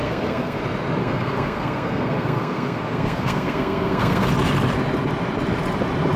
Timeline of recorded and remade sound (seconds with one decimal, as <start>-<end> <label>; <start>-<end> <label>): 0.0-0.6 remade; 0.6-1.0 recorded; 1.0-4.3 remade; 4.3-6.2 recorded